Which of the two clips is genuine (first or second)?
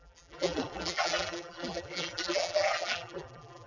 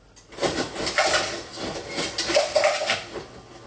second